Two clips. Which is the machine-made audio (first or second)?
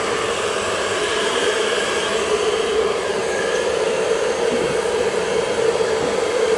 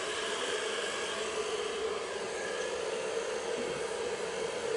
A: first